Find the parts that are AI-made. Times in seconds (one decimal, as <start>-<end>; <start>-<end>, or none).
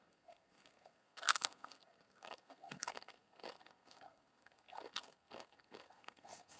0.0-6.6